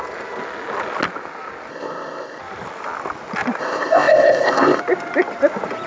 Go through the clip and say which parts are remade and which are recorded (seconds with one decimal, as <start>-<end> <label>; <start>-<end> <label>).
0.0-1.7 recorded; 1.7-2.4 remade; 2.4-3.6 recorded; 3.6-4.8 remade; 4.8-5.9 recorded